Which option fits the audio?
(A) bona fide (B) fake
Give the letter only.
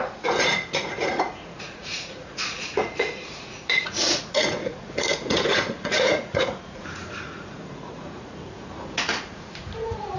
B